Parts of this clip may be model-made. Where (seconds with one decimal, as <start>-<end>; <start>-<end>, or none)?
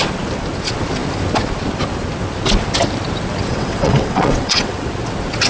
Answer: 3.5-4.9